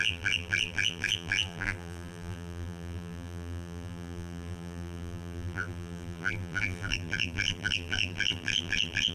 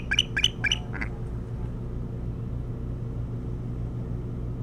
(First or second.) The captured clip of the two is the second